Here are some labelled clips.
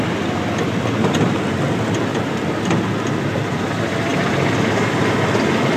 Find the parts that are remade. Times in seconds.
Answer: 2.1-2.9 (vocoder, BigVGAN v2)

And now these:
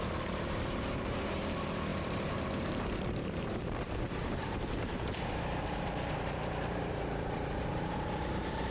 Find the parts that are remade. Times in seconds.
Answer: 0.0-8.7 (vocoder, BigVGAN v2)

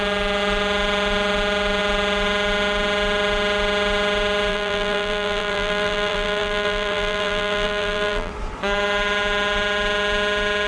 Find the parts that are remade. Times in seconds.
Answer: 4.5-8.3 (vocoder, BigVGAN v2)

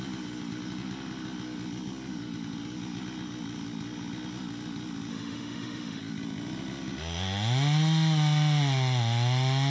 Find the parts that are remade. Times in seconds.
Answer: 5.1-6.0 (autoencoder, DAC-VAE)

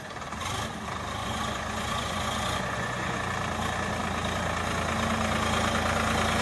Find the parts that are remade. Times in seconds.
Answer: 1.2-3.2 (vocoder, Vocos)

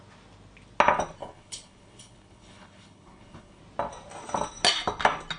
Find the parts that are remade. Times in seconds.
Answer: 1.2-3.6 (codec, HILCodec)

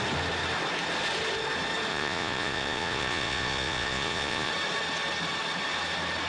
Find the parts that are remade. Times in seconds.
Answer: 1.9-4.5 (vocoder, Vocos)